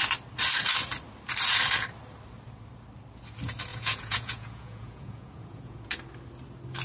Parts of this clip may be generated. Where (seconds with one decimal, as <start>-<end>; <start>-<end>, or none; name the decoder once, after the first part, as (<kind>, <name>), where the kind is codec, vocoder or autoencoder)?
3.7-5.9 (vocoder, Vocos)